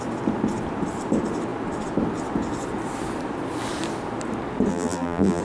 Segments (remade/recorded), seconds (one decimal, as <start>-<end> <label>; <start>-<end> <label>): 0.0-4.7 recorded; 4.7-5.4 remade